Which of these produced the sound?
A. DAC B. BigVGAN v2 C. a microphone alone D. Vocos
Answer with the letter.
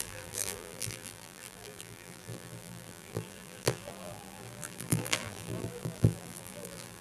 B